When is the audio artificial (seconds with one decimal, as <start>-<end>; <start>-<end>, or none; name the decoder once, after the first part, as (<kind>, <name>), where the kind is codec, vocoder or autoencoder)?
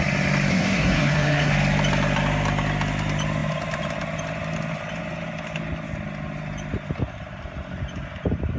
0.5-1.5 (codec, SNAC)